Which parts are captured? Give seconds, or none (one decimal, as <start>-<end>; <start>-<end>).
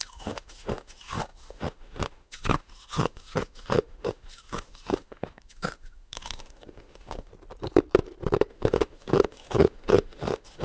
7.3-8.5